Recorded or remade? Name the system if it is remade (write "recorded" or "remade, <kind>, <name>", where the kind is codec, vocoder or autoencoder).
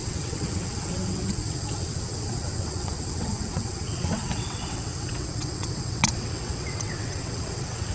remade, vocoder, WaveNeXt